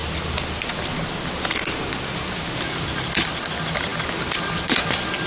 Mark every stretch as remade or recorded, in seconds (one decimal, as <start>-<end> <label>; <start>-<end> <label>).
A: 0.0-5.3 recorded